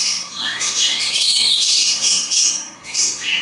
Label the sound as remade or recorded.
remade